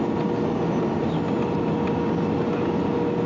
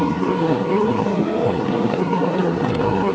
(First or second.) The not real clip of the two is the second